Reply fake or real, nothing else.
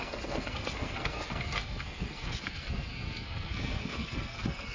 fake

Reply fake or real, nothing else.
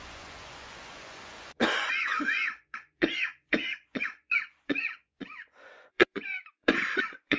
fake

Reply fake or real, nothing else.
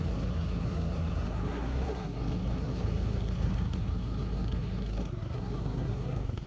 fake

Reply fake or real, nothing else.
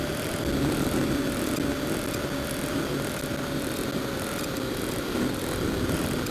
real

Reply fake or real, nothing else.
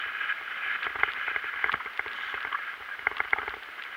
real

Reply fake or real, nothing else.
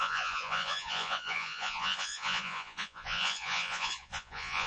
fake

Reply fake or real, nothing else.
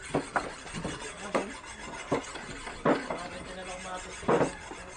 real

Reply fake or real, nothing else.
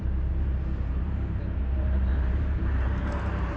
fake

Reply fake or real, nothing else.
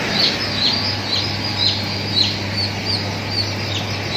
real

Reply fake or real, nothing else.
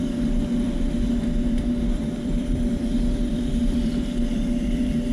fake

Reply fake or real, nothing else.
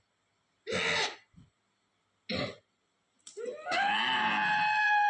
real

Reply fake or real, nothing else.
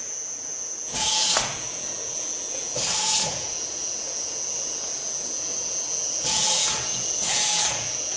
fake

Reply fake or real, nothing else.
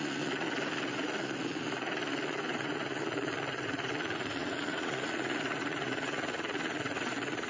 fake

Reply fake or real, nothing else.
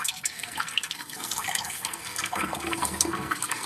fake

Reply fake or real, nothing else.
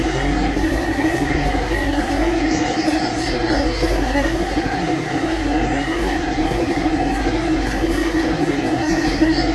fake